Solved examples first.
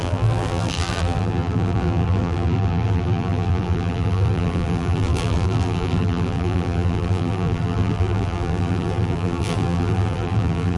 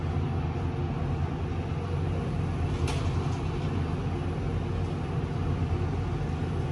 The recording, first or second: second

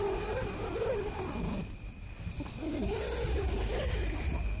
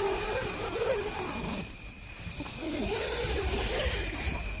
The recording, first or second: first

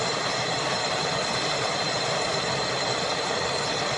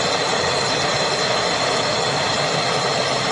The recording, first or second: second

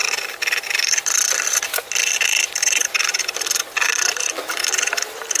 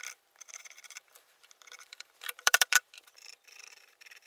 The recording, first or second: first